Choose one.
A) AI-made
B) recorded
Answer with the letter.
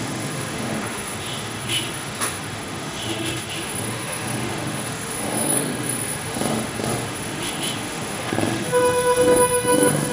A